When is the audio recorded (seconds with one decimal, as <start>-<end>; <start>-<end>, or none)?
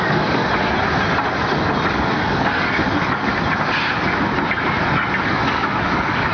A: 0.4-1.9; 3.3-5.2